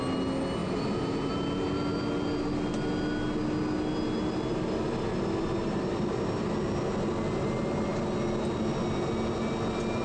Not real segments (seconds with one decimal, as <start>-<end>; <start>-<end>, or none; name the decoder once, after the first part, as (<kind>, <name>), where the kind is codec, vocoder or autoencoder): 0.6-1.3 (vocoder, BigVGAN v2)